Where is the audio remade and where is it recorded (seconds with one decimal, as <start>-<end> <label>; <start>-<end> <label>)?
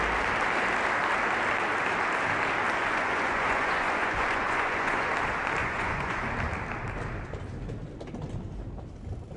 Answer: 0.0-2.8 recorded; 2.8-5.1 remade; 5.1-5.6 recorded; 5.6-6.3 remade; 6.3-9.4 recorded